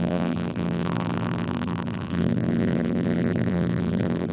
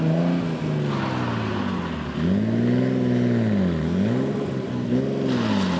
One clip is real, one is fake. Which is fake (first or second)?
first